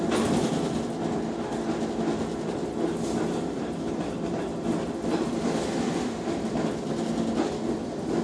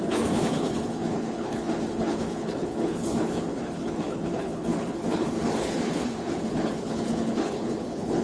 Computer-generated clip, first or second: second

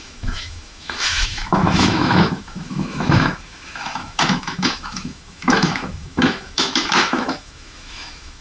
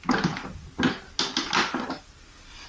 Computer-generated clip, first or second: first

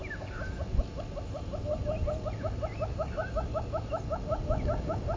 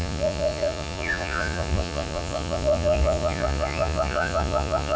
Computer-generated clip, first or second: second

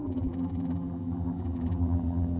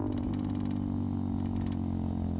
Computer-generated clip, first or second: first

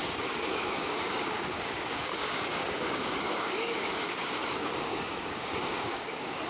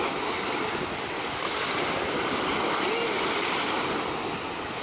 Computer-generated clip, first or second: first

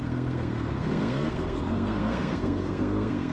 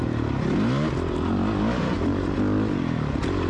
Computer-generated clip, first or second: first